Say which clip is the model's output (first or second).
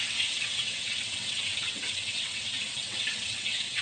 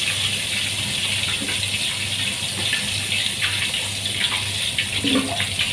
first